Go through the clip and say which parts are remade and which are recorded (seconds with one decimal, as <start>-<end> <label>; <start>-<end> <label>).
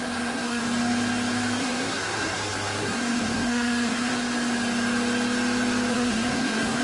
0.0-0.6 remade; 0.6-1.6 recorded; 1.6-4.1 remade; 4.1-5.9 recorded; 5.9-6.8 remade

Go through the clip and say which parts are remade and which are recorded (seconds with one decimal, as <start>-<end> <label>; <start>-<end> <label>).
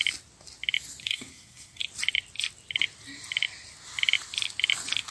0.0-1.0 recorded; 1.0-1.8 remade; 1.8-5.1 recorded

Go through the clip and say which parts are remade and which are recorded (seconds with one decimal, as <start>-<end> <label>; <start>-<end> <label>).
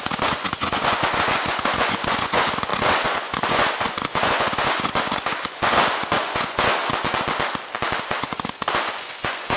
0.0-6.8 remade; 6.8-8.0 recorded; 8.0-9.6 remade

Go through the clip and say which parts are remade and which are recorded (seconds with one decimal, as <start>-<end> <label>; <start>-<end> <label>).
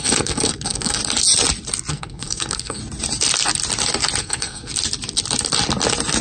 0.0-1.0 remade; 1.0-1.9 recorded; 1.9-2.8 remade; 2.8-4.2 recorded; 4.2-4.7 remade; 4.7-6.2 recorded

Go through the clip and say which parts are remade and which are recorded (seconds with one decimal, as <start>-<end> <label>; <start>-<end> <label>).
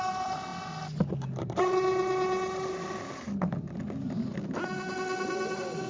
0.0-5.9 recorded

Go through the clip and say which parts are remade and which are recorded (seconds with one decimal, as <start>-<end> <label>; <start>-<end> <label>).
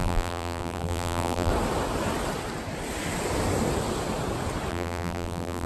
0.0-1.5 remade; 1.5-4.7 recorded; 4.7-5.7 remade